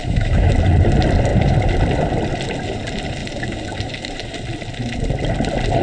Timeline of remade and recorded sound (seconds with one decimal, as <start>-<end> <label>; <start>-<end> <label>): 0.0-0.5 remade; 0.5-5.8 recorded